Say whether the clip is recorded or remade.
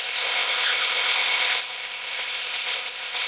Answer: remade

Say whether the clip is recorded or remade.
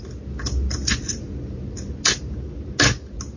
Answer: recorded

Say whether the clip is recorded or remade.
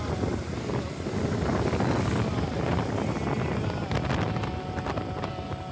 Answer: recorded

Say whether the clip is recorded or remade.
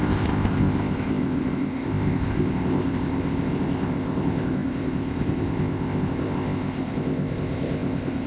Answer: remade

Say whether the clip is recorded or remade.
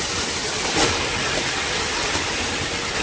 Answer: recorded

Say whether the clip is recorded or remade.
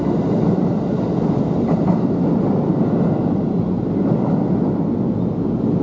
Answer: recorded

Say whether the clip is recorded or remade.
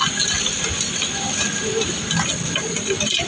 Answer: recorded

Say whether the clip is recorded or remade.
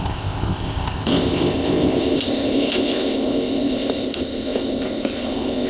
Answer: remade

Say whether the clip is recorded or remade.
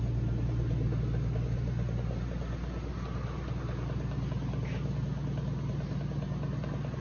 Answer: recorded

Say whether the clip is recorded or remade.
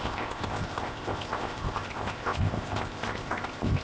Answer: remade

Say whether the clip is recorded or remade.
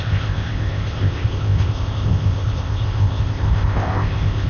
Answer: remade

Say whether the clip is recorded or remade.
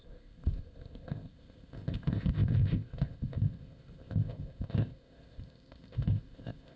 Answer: remade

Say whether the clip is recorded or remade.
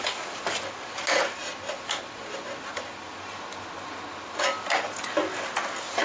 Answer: recorded